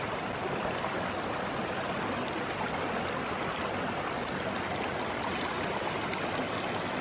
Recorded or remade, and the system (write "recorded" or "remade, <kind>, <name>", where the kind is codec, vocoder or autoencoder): recorded